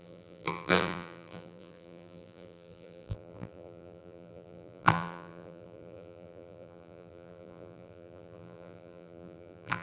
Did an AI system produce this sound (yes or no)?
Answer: yes